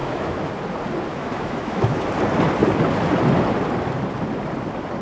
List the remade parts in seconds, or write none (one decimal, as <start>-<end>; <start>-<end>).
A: 0.0-0.5; 1.1-2.0